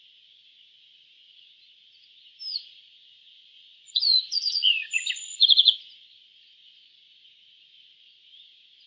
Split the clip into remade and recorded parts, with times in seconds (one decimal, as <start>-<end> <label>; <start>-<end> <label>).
0.0-2.5 recorded; 2.5-5.8 remade; 5.8-8.9 recorded

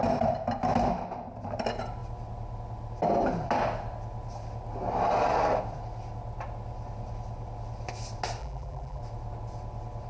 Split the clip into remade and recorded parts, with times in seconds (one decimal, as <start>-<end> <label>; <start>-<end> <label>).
0.0-8.4 recorded; 8.4-9.0 remade; 9.0-10.1 recorded

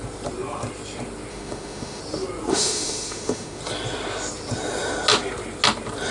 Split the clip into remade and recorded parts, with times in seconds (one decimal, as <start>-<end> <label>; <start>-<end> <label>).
0.0-1.3 recorded; 1.3-2.0 remade; 2.0-2.5 recorded; 2.5-3.6 remade; 3.6-6.1 recorded

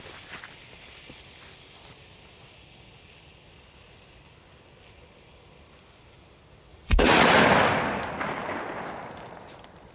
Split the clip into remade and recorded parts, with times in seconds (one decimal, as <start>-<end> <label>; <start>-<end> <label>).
0.0-6.7 recorded; 6.7-7.4 remade; 7.4-9.9 recorded

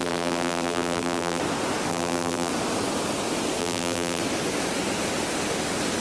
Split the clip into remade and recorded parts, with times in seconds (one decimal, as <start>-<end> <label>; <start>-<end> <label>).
0.0-1.4 remade; 1.4-1.9 recorded; 1.9-2.5 remade; 2.5-3.6 recorded; 3.6-4.2 remade; 4.2-6.0 recorded